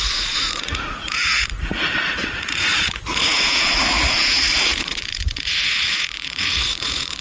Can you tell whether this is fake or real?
fake